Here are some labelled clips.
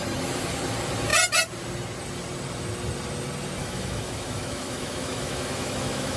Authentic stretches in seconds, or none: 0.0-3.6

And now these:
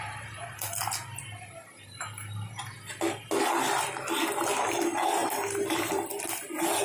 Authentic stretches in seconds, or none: 0.0-5.2; 6.1-6.8

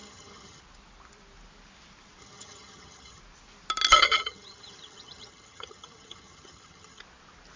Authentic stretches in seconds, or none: 0.6-2.2; 3.2-3.9; 7.0-7.6

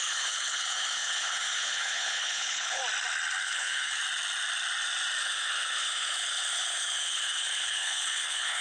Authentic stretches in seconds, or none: 2.8-3.4; 4.0-5.2

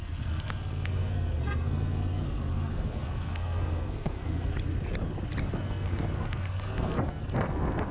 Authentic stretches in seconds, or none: 4.5-5.4

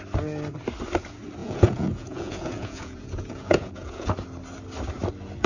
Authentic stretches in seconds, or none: 0.0-1.4; 4.1-5.5